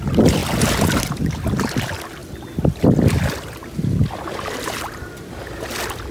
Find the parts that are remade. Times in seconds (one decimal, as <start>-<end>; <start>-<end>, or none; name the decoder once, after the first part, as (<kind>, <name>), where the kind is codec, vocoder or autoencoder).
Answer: none